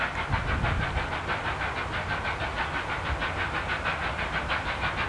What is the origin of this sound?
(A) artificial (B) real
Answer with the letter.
B